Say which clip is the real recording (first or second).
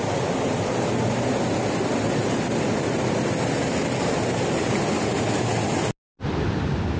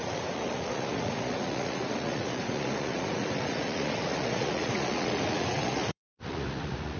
first